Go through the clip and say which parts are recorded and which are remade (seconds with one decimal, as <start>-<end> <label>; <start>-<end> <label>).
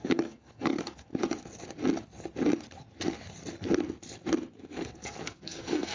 0.0-1.1 remade; 1.1-4.6 recorded; 4.6-5.9 remade